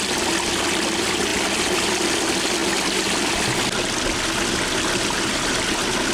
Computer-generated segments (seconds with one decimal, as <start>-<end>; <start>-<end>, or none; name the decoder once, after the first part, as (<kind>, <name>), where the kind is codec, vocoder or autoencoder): 1.3-2.0 (vocoder, BigVGAN v2)